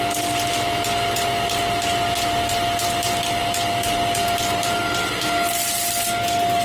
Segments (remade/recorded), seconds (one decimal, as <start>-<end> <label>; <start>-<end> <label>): 0.0-6.6 recorded